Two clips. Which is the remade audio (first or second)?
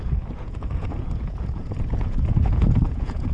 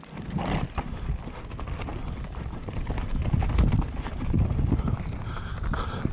first